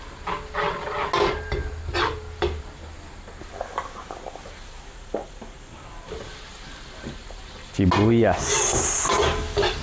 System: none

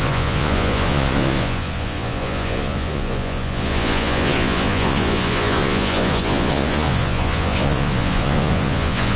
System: vocoder, Vocos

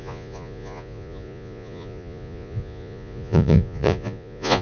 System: vocoder, Vocos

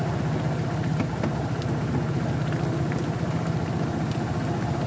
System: none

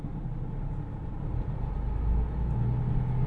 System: none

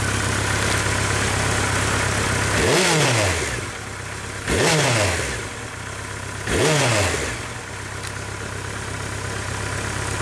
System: none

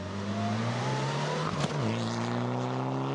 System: none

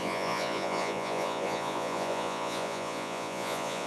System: vocoder, Vocos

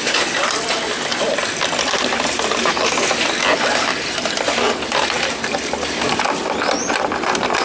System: none